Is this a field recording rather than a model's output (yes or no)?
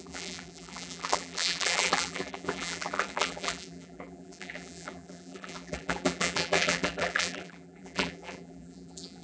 no